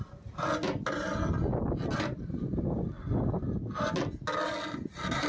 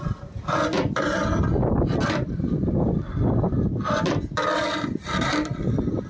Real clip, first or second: first